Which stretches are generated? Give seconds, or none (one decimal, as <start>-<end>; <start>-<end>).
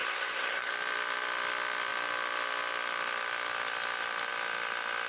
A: 0.0-0.7